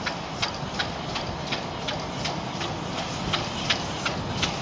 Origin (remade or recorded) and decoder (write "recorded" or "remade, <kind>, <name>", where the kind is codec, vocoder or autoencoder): recorded